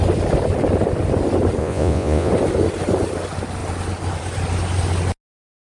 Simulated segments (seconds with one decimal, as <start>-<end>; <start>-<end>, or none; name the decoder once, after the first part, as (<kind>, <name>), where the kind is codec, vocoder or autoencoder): 1.6-2.3 (vocoder, Vocos)